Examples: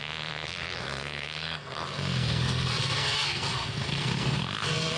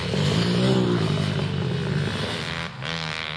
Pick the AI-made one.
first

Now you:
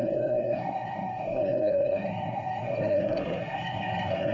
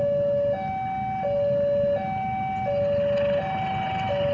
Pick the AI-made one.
first